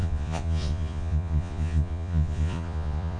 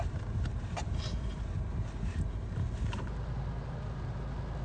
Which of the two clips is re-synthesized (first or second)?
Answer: first